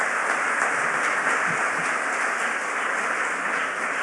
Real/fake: real